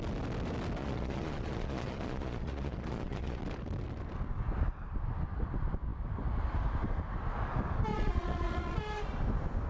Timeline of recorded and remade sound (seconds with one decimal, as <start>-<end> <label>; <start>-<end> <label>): 0.0-0.8 recorded; 0.8-3.4 remade; 3.4-7.9 recorded; 7.9-8.8 remade; 8.8-9.7 recorded